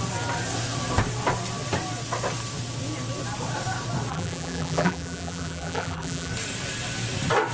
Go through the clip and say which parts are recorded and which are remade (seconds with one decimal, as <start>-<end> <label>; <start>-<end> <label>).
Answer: 0.0-4.1 recorded; 4.1-6.3 remade; 6.3-7.5 recorded